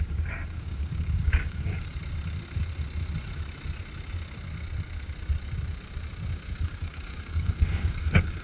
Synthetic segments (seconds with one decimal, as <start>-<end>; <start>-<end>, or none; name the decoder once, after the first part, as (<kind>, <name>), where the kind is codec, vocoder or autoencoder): 0.0-2.0 (codec, DAC); 6.6-8.4